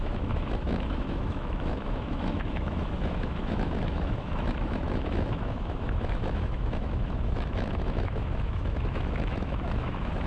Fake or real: fake